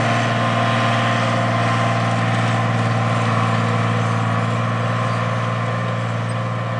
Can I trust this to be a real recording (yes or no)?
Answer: yes